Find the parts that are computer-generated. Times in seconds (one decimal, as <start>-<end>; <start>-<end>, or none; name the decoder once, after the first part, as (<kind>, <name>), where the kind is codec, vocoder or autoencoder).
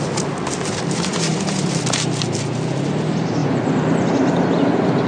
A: none